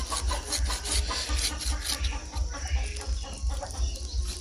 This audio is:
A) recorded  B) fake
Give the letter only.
A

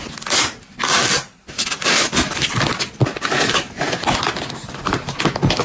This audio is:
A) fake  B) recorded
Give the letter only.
B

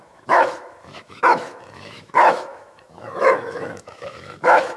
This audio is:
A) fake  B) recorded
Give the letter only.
A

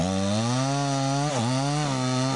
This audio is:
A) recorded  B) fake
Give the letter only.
A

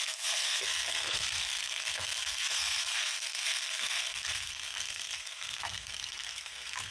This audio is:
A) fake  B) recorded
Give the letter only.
A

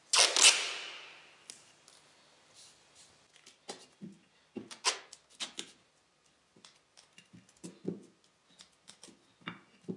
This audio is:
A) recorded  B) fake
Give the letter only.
A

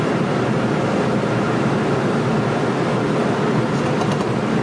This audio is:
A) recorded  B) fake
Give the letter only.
A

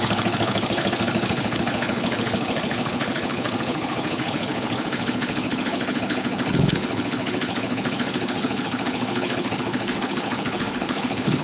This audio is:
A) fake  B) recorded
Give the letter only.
A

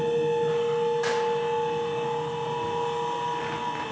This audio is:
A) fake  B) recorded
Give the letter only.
B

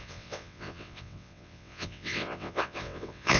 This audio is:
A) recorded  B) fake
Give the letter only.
B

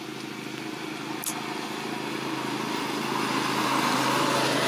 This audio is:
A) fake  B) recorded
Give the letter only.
B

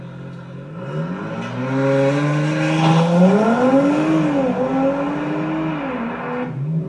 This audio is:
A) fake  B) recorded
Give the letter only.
B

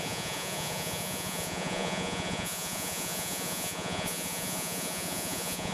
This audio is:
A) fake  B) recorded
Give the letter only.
A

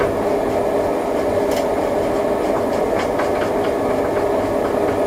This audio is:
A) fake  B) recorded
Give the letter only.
B